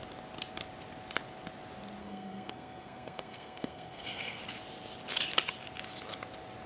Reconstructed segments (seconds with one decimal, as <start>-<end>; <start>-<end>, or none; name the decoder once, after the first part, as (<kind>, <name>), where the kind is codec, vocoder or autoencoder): 2.0-4.4 (codec, SNAC)